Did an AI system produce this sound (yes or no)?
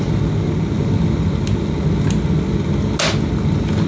no